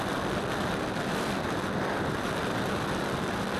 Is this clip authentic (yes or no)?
yes